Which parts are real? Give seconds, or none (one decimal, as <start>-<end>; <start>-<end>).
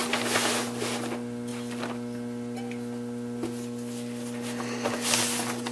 0.0-5.7